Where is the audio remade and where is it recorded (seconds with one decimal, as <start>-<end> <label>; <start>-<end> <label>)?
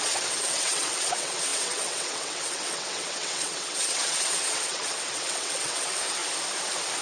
0.0-6.2 remade; 6.2-7.0 recorded